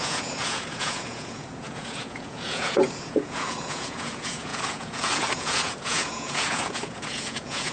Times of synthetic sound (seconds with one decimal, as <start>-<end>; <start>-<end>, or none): 0.0-7.7